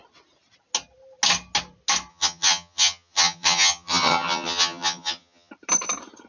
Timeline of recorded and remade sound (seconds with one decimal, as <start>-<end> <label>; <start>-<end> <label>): 0.0-2.1 recorded; 2.1-5.5 remade; 5.5-6.3 recorded